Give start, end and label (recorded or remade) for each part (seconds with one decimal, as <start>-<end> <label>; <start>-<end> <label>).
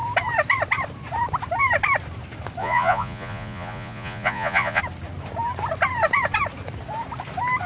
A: 0.0-2.6 recorded; 2.6-4.8 remade; 4.8-7.7 recorded